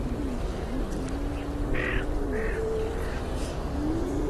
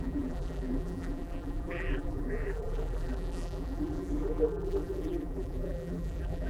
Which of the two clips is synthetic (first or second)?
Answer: second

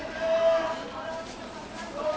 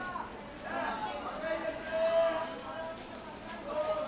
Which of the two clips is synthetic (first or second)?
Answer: first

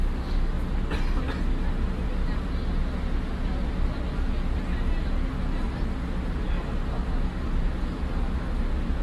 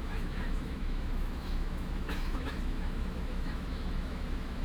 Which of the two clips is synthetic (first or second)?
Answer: second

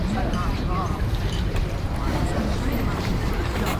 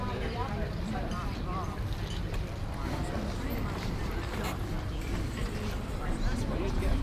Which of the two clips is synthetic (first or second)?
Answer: first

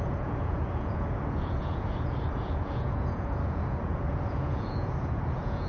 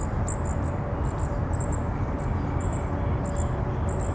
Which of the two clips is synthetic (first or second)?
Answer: first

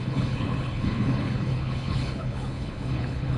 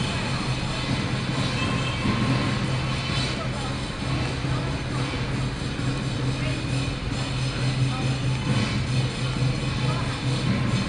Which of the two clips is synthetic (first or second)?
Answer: first